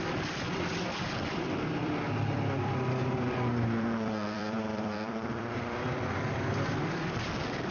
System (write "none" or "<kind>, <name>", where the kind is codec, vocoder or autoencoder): vocoder, BigVGAN v2